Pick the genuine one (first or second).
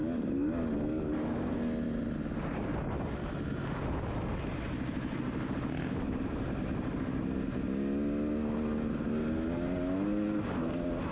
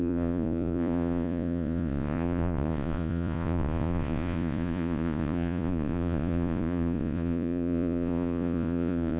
first